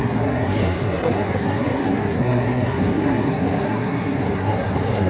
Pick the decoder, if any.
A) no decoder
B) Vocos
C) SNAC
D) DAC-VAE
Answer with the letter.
C